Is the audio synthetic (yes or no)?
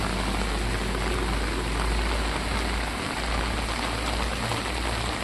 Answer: no